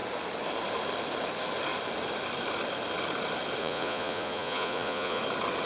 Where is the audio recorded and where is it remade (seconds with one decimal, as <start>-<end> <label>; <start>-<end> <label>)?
0.0-3.6 recorded; 3.6-5.2 remade; 5.2-5.7 recorded